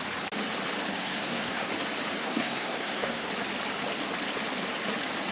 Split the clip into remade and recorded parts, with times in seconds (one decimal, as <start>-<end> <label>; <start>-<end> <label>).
0.0-1.0 recorded; 1.0-1.7 remade; 1.7-2.2 recorded; 2.2-3.3 remade; 3.3-5.3 recorded